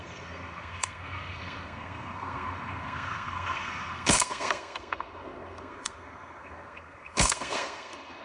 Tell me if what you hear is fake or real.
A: fake